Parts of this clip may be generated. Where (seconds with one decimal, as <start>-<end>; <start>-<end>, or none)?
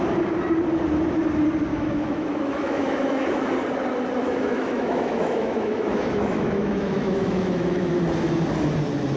1.7-3.5; 4.2-7.9